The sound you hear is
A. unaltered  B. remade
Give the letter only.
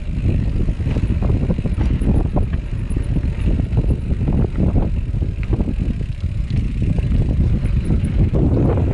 A